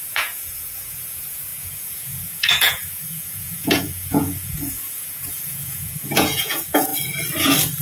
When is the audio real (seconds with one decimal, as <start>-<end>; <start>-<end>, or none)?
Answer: 6.9-7.8